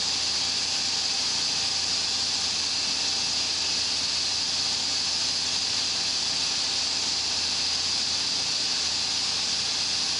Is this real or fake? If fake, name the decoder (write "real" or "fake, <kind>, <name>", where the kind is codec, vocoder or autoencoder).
real